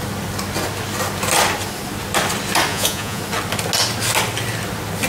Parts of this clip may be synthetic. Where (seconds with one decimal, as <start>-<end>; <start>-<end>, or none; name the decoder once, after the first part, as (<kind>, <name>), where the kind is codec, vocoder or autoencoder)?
2.7-3.2 (vocoder, Vocos)